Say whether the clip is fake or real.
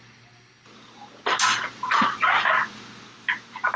real